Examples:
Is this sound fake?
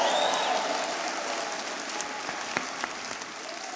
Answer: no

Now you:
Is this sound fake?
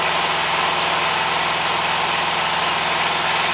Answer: no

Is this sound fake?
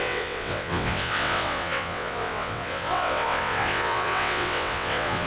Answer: yes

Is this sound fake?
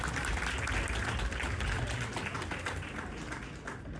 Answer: no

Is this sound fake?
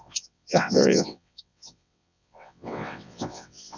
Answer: yes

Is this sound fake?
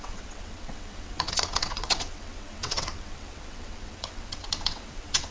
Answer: yes